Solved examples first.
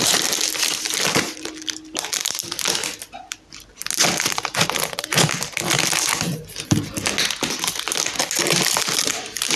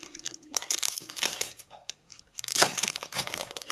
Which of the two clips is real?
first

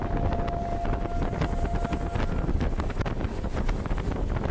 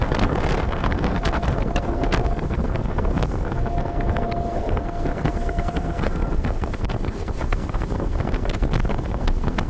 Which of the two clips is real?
first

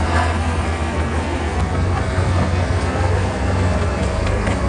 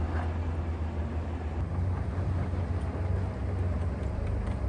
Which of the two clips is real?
second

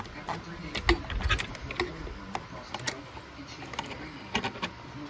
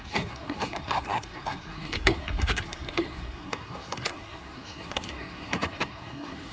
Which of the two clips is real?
first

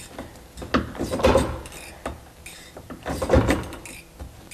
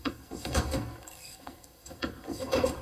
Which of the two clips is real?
first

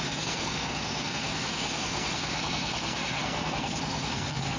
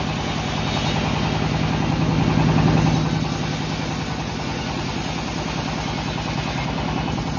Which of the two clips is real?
second